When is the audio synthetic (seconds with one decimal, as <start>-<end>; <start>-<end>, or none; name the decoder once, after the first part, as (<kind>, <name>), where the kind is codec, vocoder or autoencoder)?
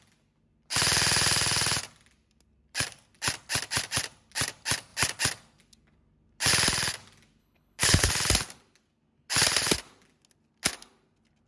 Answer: 7.4-8.1 (codec, HILCodec)